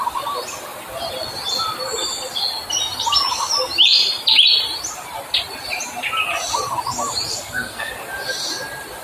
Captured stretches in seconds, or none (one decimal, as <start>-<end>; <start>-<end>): 0.0-7.3; 7.9-9.0